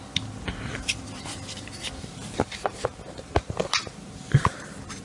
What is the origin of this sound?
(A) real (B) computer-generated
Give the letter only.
A